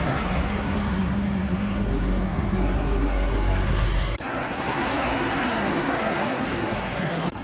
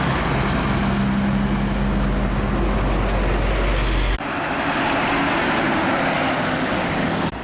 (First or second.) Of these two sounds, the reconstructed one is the first